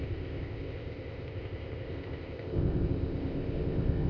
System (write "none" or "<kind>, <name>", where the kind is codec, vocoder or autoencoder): codec, ZipCodec